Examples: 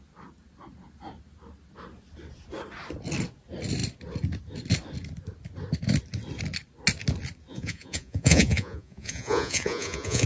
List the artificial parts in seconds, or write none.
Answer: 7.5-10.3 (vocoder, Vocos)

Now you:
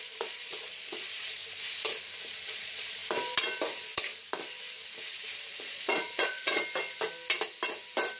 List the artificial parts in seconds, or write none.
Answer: 0.0-1.4 (vocoder, Vocos); 2.3-3.0; 5.6-6.6

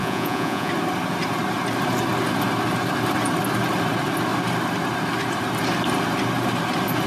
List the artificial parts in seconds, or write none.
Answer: 0.0-0.7 (vocoder, Vocos)

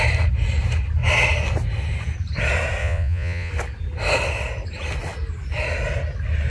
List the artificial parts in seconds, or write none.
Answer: 2.8-3.5 (vocoder, Vocos)

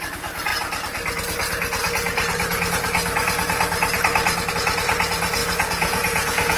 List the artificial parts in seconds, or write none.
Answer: 5.4-6.6 (vocoder, Vocos)

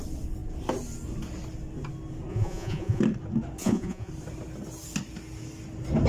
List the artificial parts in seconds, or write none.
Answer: 2.3-3.0 (vocoder, Vocos); 3.6-4.1